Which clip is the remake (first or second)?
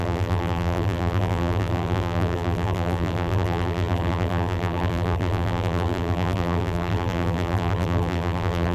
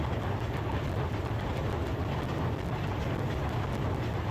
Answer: first